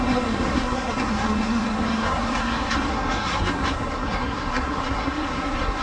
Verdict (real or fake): fake